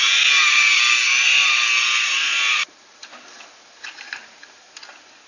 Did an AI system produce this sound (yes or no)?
no